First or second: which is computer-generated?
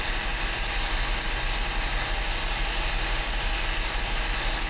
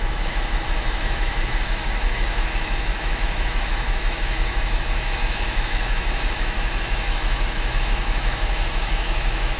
second